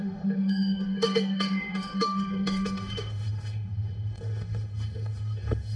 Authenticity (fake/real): fake